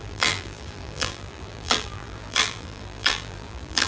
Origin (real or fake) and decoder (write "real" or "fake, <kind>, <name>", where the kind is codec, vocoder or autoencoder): fake, vocoder, BigVGAN v2